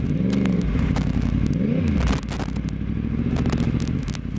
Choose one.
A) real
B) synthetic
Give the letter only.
A